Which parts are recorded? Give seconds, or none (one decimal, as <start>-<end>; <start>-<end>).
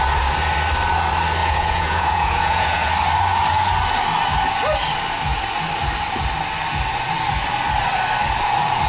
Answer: 0.0-1.4; 2.9-8.9